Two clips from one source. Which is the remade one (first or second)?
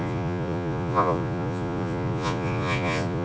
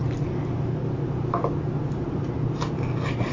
first